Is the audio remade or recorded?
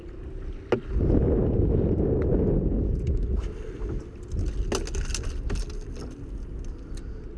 recorded